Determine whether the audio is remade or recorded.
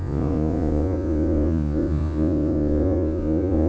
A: remade